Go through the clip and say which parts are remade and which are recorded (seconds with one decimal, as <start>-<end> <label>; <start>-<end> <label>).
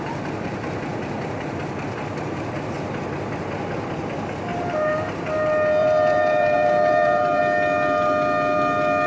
0.0-4.5 recorded; 4.5-5.2 remade; 5.2-5.8 recorded; 5.8-7.4 remade; 7.4-9.1 recorded